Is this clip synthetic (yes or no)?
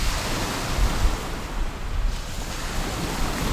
no